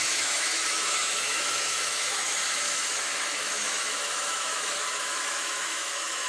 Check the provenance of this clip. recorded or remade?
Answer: remade